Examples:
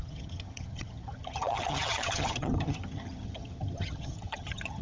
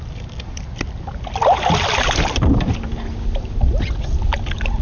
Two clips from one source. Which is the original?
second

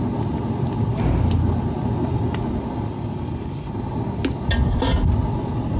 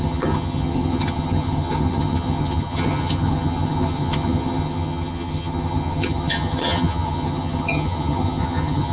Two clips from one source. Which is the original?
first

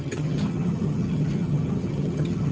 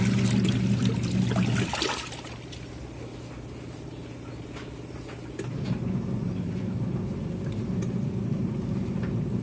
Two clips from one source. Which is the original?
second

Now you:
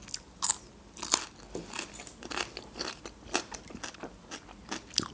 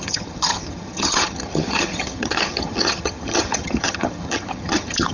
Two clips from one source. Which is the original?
first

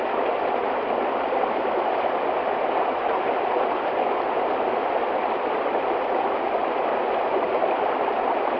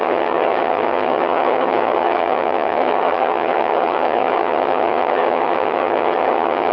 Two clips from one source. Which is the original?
first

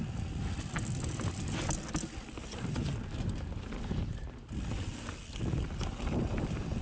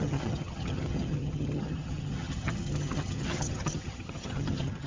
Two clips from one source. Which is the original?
first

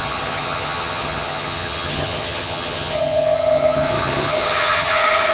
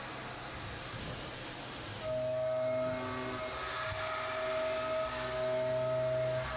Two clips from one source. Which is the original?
second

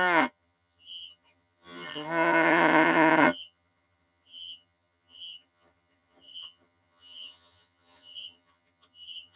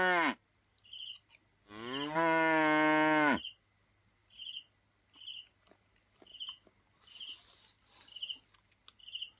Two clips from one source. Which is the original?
second